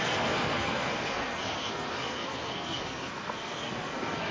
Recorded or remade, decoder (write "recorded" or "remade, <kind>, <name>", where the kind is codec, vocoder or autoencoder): remade, codec, SNAC